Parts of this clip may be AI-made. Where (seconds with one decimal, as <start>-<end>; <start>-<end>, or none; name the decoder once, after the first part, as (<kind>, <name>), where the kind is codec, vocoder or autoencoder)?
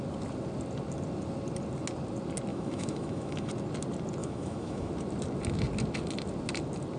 2.5-3.5 (autoencoder, DAC-VAE); 4.2-4.9